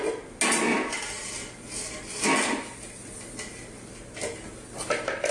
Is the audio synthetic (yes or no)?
no